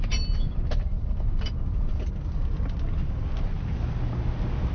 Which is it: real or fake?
real